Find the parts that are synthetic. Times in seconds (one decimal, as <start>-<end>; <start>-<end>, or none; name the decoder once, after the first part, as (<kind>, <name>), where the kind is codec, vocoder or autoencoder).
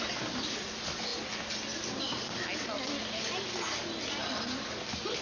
none